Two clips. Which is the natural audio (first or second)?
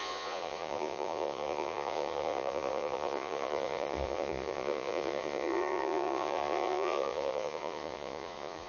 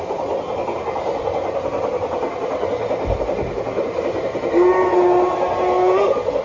second